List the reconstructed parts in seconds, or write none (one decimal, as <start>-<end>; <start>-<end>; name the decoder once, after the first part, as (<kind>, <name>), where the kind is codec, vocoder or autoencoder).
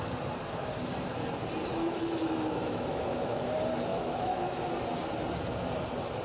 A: 1.7-3.4 (autoencoder, DAC-VAE); 3.9-4.6